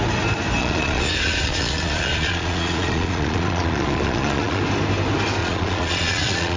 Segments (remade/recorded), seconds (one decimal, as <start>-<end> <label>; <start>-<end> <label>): 0.0-0.6 recorded; 0.6-4.6 remade; 4.6-5.4 recorded; 5.4-6.6 remade